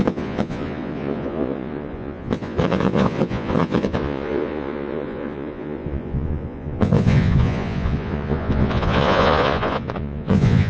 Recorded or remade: remade